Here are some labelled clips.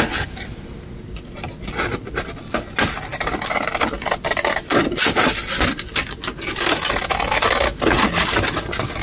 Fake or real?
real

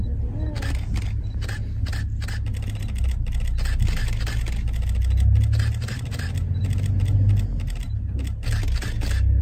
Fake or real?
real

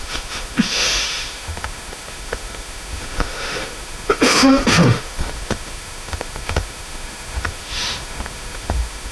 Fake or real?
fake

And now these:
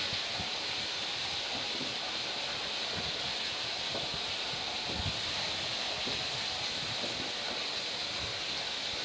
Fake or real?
real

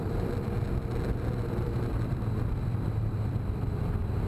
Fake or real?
fake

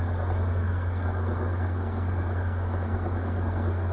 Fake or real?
fake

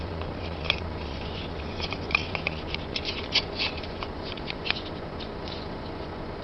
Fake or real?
fake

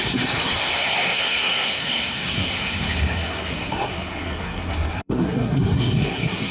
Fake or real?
fake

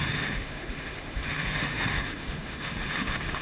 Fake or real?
fake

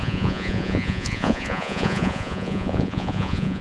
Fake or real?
fake